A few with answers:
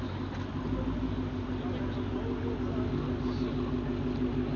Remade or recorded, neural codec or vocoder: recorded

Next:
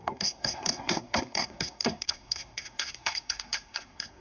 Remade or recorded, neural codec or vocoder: remade, codec, SNAC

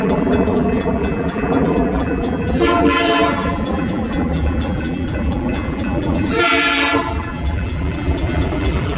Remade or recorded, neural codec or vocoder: remade, vocoder, BigVGAN v2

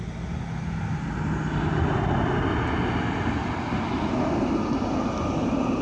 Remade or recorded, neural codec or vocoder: recorded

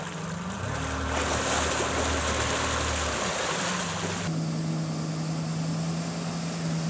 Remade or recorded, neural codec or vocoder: recorded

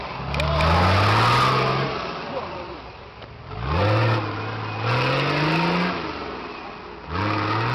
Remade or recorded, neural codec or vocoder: recorded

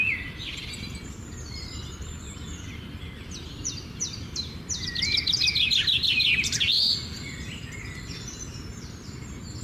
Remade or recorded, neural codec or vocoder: remade, vocoder, BigVGAN v2